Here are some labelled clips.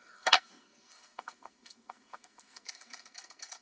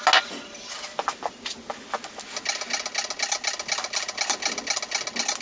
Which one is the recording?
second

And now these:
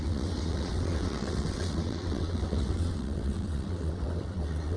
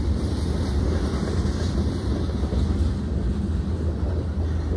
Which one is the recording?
second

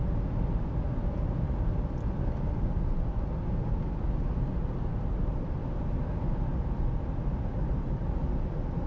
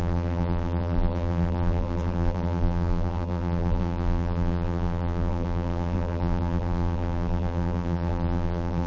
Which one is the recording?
first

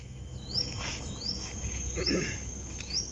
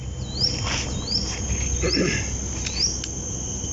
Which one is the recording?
second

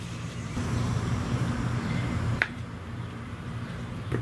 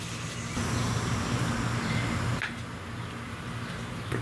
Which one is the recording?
second